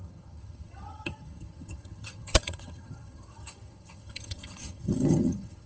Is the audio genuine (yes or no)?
no